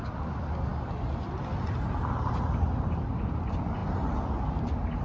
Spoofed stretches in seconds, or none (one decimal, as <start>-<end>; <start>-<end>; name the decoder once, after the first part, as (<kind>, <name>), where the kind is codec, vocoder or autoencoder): none